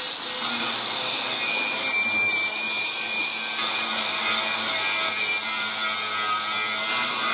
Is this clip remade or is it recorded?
recorded